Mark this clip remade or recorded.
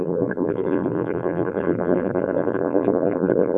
remade